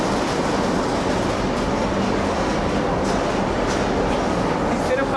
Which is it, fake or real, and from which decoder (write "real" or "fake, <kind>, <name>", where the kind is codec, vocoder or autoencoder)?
real